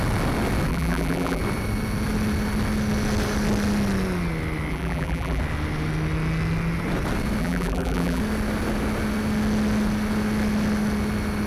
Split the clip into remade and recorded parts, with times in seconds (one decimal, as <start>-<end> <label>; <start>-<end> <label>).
0.0-0.7 recorded; 0.7-1.4 remade; 1.4-4.7 recorded; 4.7-5.4 remade; 5.4-7.4 recorded; 7.4-8.2 remade; 8.2-11.5 recorded